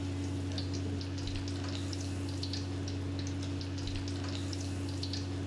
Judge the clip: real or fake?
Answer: real